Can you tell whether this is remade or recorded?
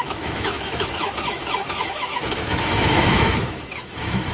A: remade